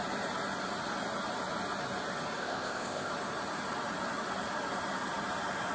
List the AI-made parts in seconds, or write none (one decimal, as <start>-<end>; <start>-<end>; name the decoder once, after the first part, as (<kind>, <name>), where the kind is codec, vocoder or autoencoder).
2.4-3.1 (codec, ZipCodec)